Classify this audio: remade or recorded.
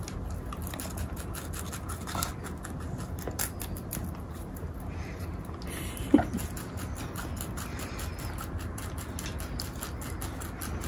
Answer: recorded